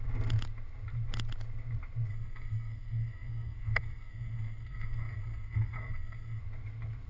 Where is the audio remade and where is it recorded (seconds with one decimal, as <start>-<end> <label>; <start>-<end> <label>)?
0.0-2.1 recorded; 2.1-6.4 remade; 6.4-7.1 recorded